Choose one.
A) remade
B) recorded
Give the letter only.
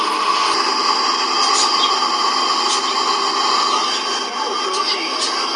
B